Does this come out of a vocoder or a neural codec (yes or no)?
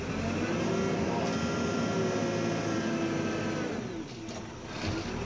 no